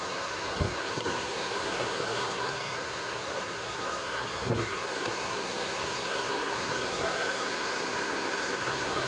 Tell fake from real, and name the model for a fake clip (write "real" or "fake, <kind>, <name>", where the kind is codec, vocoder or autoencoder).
fake, codec, SNAC